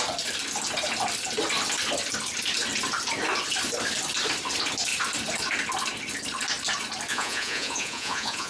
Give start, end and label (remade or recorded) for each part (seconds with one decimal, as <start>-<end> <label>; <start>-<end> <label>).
0.0-7.1 recorded; 7.1-8.5 remade